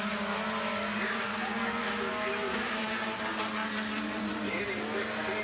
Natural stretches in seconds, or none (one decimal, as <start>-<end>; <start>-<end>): 0.0-0.7; 1.8-2.5; 3.2-5.4